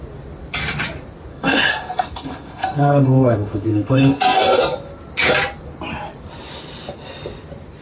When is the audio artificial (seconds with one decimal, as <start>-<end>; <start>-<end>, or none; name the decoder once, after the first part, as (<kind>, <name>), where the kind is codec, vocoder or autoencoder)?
1.3-4.6 (codec, SNAC)

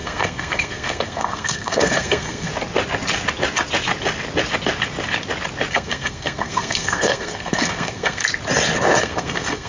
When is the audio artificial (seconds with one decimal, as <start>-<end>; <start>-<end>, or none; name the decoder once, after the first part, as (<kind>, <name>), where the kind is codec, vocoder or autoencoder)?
0.0-2.5 (codec, SNAC); 5.7-8.2; 9.0-9.7

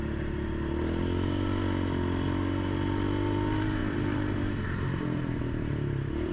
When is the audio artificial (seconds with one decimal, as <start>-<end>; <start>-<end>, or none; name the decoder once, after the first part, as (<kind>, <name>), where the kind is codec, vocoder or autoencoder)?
3.8-6.3 (vocoder, BigVGAN v2)

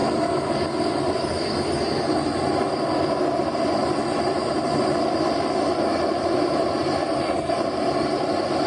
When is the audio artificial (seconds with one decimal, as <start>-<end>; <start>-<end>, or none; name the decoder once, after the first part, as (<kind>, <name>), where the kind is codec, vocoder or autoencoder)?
3.8-8.2 (vocoder, BigVGAN v2)

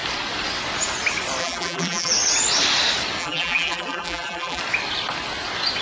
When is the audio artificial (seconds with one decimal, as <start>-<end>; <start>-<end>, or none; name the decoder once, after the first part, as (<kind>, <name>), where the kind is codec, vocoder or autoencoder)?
1.4-2.1 (vocoder, BigVGAN v2); 3.2-4.6